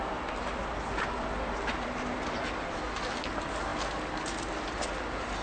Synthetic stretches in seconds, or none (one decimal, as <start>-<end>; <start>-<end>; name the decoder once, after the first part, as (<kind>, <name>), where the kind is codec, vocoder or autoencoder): none